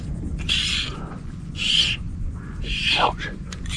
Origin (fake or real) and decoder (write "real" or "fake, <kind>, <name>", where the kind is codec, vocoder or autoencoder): fake, vocoder, Vocos